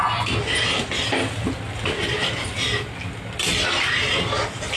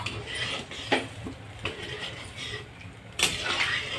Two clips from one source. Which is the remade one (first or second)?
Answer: second